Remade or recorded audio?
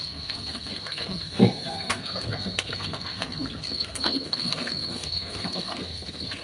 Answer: remade